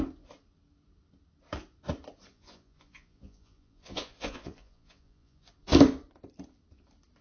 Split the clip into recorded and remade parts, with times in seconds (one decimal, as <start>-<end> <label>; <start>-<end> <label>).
0.0-2.3 recorded; 2.3-5.5 remade; 5.5-7.2 recorded